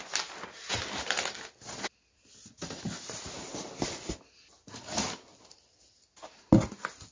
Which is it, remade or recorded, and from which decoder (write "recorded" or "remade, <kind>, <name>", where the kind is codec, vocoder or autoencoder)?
recorded